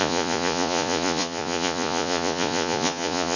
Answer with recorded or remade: remade